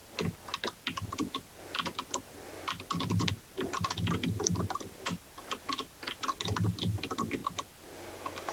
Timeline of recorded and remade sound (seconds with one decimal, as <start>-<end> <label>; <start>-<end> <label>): 0.0-3.3 recorded; 3.3-7.4 remade; 7.4-8.1 recorded; 8.1-8.5 remade